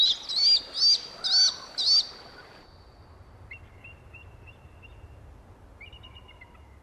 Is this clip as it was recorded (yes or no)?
yes